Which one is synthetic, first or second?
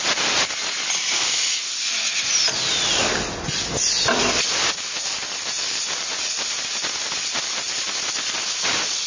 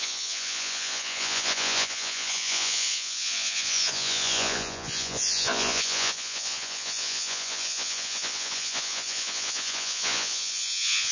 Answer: second